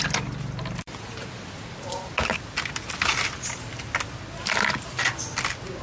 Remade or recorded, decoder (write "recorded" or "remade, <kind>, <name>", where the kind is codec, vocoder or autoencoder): recorded